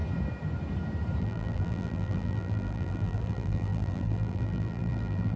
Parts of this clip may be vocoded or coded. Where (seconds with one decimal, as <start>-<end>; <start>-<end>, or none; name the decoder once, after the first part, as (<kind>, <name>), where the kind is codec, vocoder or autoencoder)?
1.2-5.4 (vocoder, BigVGAN v2)